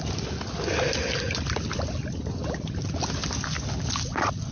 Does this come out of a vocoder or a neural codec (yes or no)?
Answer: no